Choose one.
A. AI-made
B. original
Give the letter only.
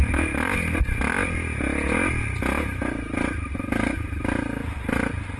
B